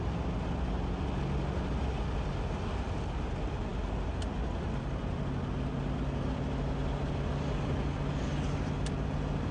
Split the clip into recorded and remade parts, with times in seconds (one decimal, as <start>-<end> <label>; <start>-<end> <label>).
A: 0.0-9.5 recorded